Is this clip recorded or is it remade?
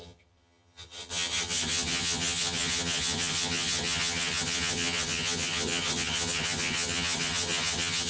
remade